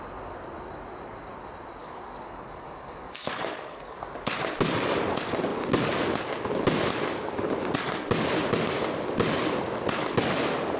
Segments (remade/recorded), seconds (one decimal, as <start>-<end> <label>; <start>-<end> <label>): 0.0-1.8 recorded; 1.8-4.0 remade; 4.0-10.8 recorded